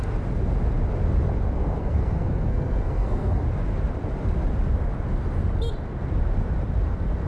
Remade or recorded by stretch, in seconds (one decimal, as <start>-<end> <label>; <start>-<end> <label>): 0.0-1.8 recorded; 1.8-3.4 remade; 3.4-7.3 recorded